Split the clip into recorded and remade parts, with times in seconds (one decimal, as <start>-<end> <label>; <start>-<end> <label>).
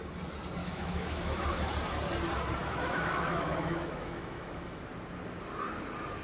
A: 0.0-0.6 recorded; 0.6-1.7 remade; 1.7-2.6 recorded; 2.6-4.8 remade; 4.8-6.2 recorded